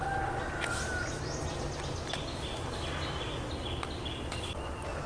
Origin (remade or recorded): recorded